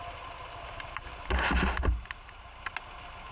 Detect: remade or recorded recorded